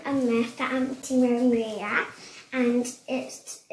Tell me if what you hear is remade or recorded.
recorded